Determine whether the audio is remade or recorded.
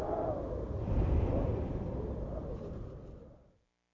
remade